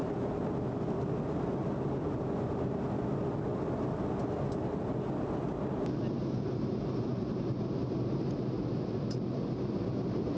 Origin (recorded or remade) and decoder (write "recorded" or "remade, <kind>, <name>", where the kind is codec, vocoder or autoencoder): recorded